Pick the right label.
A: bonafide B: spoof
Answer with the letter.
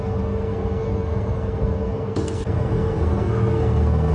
B